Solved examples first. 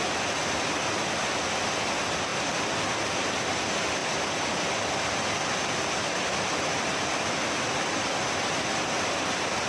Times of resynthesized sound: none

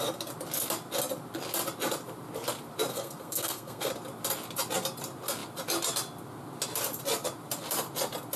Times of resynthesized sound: 2.9-3.9 (codec, SNAC)

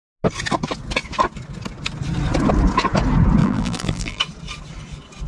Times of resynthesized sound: 3.4-4.2 (vocoder, BigVGAN v2)